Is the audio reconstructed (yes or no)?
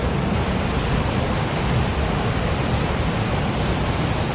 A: no